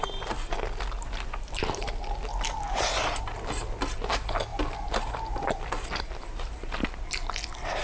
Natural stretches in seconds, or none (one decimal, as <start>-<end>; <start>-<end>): 0.0-7.8